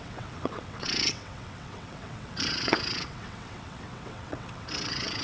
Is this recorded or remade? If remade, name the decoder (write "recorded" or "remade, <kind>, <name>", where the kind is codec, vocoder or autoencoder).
remade, vocoder, WaveNeXt